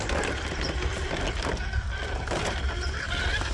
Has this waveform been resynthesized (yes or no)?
no